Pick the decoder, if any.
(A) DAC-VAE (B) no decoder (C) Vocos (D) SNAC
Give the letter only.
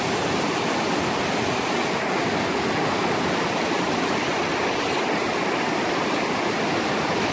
B